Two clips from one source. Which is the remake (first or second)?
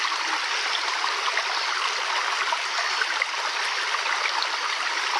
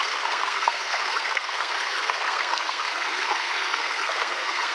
second